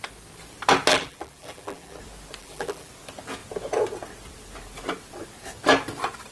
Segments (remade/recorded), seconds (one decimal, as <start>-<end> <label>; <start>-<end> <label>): 0.0-0.9 recorded; 0.9-2.0 remade; 2.0-2.4 recorded; 2.4-2.9 remade; 2.9-6.3 recorded